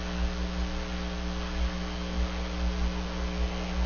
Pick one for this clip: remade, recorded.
recorded